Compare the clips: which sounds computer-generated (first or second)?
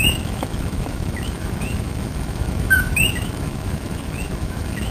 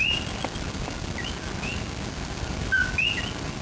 first